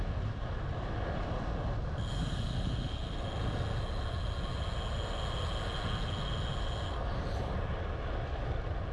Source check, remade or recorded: recorded